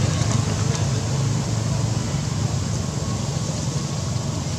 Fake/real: real